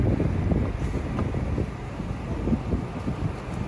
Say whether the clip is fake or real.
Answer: real